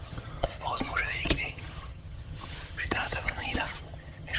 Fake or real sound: fake